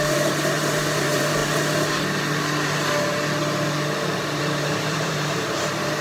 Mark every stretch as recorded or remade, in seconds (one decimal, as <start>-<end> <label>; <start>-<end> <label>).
0.0-1.4 remade; 1.4-4.4 recorded; 4.4-6.0 remade